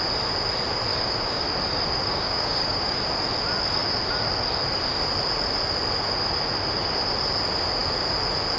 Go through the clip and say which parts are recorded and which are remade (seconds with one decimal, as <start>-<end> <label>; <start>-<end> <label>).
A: 0.0-0.9 recorded; 0.9-1.4 remade; 1.4-2.0 recorded; 2.0-3.0 remade; 3.0-8.6 recorded